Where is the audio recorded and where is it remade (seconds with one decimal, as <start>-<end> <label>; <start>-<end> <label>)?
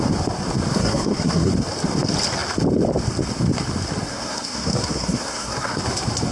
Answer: 0.0-0.7 recorded; 0.7-1.5 remade; 1.5-4.1 recorded; 4.1-5.8 remade; 5.8-6.3 recorded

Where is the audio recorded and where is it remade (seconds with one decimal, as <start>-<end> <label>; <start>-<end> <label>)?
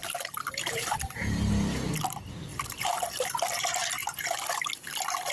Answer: 0.0-1.5 remade; 1.5-2.5 recorded; 2.5-3.4 remade; 3.4-4.0 recorded; 4.0-4.7 remade; 4.7-5.3 recorded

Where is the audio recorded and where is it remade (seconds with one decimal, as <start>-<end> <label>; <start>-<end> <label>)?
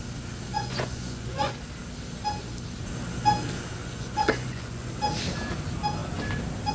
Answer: 0.0-0.5 recorded; 0.5-1.5 remade; 1.5-3.8 recorded; 3.8-4.9 remade; 4.9-6.7 recorded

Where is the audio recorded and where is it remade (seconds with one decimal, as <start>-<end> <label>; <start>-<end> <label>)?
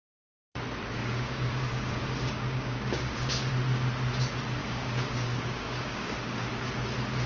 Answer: 0.0-1.0 recorded; 1.0-3.5 remade; 3.5-4.6 recorded; 4.6-6.5 remade; 6.5-7.3 recorded